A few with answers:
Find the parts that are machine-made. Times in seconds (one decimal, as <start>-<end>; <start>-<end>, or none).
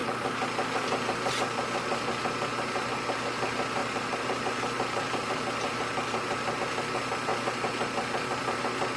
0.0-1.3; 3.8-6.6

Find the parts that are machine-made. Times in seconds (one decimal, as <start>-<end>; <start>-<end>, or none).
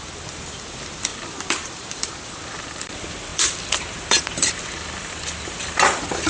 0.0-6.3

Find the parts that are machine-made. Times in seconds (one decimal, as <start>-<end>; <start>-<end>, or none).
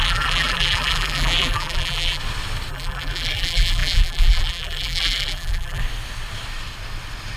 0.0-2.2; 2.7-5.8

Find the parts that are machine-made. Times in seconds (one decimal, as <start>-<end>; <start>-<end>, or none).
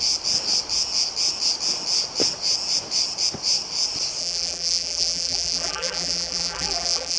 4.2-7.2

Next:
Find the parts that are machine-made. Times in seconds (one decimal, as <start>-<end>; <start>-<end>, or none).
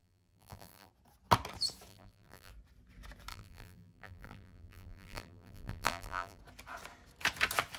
0.0-0.9; 1.9-2.5; 3.3-6.4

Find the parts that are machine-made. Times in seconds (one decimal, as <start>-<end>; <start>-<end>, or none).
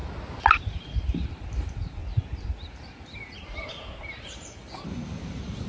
1.2-2.0; 2.6-5.7